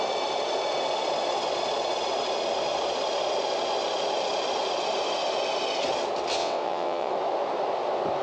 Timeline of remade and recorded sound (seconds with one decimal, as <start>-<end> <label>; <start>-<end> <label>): 0.0-6.4 recorded; 6.4-7.1 remade; 7.1-8.2 recorded